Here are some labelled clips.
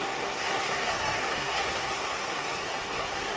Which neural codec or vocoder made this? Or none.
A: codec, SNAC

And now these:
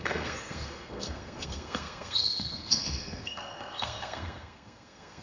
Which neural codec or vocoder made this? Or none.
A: codec, SNAC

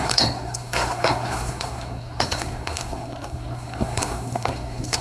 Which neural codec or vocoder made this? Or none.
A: codec, SNAC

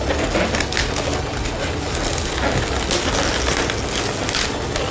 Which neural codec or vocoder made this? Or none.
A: none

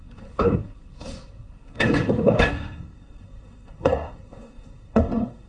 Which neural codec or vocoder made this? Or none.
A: codec, SNAC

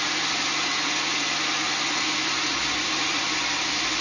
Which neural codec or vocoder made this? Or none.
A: none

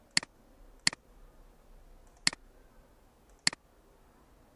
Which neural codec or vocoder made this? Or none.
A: none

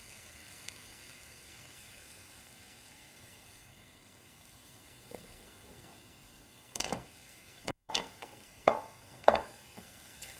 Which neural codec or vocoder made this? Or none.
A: codec, SNAC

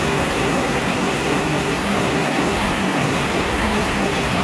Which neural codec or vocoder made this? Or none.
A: codec, SNAC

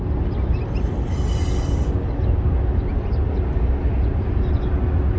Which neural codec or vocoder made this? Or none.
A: none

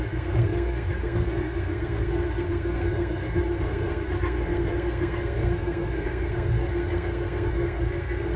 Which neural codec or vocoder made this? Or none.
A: codec, SNAC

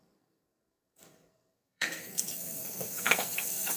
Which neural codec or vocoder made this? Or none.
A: codec, SNAC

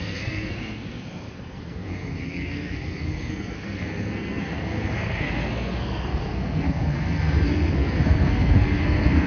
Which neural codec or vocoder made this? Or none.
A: codec, SNAC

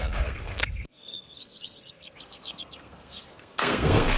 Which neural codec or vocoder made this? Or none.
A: codec, SNAC